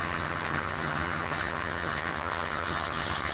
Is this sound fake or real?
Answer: fake